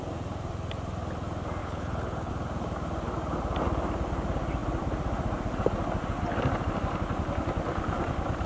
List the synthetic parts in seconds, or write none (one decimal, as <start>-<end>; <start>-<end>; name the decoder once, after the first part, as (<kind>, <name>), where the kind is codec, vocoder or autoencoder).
1.6-2.3 (codec, HILCodec)